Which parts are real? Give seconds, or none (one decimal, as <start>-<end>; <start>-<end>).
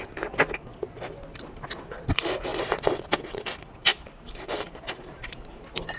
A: 0.0-3.9; 5.3-6.0